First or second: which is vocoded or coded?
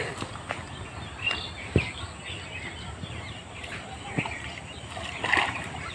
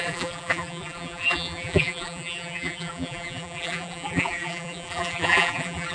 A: second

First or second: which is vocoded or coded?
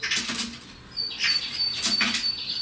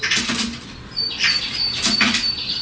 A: second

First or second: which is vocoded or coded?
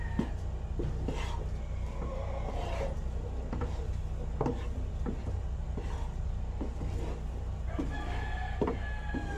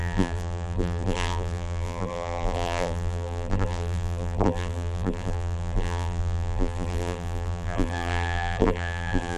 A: second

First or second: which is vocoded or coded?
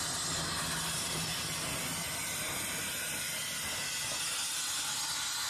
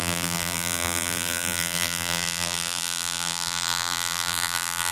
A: second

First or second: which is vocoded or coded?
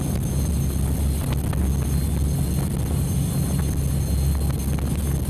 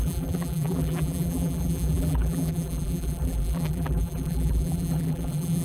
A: second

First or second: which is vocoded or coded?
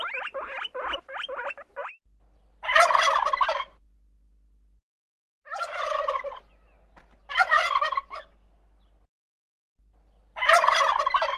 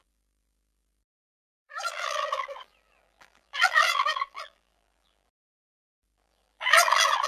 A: second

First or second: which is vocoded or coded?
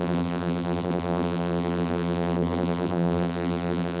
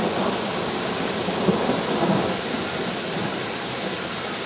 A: first